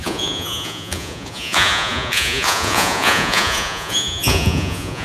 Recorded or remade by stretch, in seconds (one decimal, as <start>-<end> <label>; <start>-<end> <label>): 0.0-5.0 remade